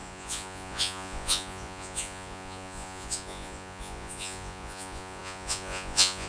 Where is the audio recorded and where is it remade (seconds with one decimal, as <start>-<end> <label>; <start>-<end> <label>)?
0.0-6.3 remade